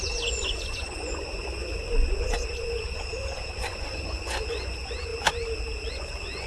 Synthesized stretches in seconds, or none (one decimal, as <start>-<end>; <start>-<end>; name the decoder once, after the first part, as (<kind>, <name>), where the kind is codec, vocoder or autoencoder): 0.0-5.1 (vocoder, Vocos); 5.9-6.5